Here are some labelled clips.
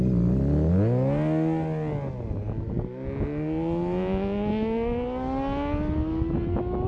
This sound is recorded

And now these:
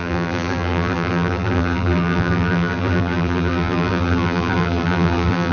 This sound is remade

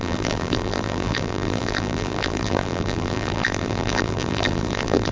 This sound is remade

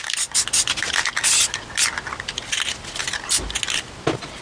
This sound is recorded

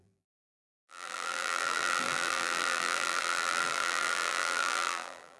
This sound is remade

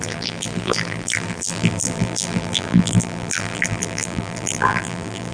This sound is remade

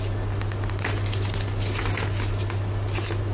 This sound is recorded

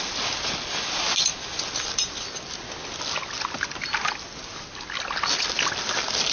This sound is recorded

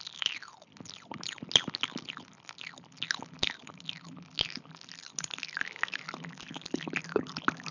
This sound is recorded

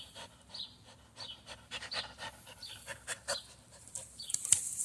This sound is remade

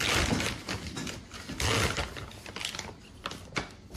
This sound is recorded